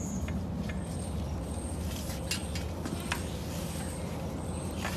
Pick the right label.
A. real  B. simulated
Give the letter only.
A